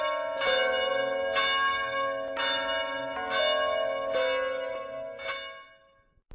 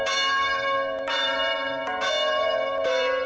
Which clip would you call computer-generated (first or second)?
second